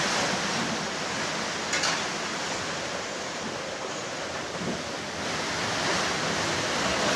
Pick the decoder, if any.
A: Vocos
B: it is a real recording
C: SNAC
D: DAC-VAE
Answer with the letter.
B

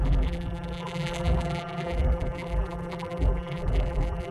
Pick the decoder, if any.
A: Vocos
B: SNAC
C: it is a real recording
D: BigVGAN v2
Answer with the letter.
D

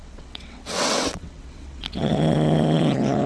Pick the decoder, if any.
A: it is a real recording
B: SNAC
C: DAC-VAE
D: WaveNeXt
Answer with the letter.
D